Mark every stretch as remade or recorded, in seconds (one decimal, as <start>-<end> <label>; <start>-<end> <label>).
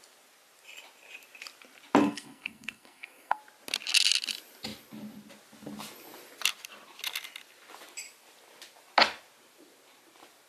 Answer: 0.0-2.0 recorded; 2.0-3.4 remade; 3.4-10.5 recorded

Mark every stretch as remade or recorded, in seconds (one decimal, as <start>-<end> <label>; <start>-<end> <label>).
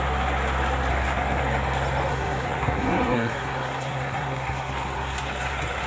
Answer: 0.0-0.9 recorded; 0.9-1.4 remade; 1.4-2.1 recorded; 2.1-5.9 remade